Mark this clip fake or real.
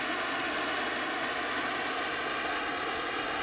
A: real